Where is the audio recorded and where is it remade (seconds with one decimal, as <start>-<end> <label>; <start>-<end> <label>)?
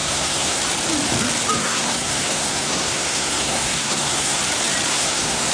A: 0.0-0.6 remade; 0.6-1.6 recorded; 1.6-4.4 remade; 4.4-4.9 recorded; 4.9-5.5 remade